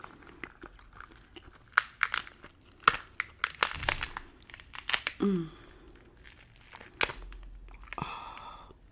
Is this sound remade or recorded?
recorded